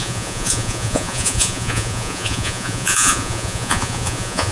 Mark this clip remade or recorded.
remade